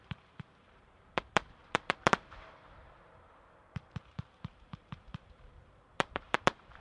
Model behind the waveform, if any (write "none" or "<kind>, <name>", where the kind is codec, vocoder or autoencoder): vocoder, BigVGAN v2